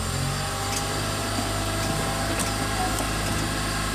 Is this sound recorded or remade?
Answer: recorded